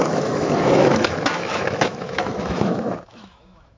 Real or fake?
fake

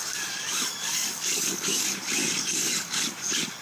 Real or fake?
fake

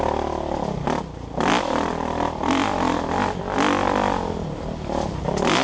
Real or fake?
real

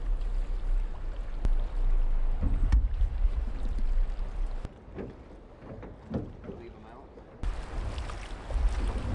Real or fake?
real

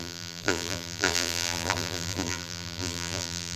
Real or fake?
fake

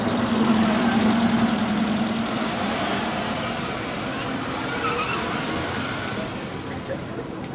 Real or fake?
real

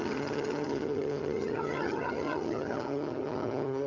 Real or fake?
fake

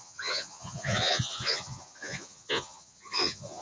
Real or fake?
fake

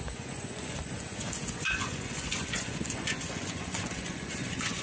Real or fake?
fake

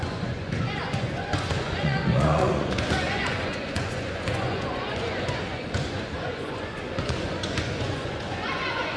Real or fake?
fake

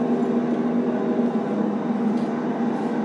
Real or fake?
real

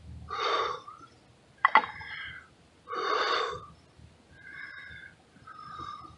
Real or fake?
real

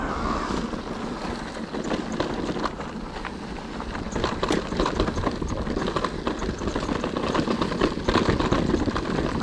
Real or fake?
real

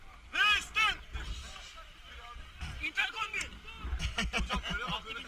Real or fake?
real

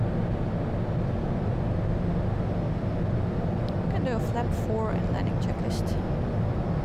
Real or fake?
real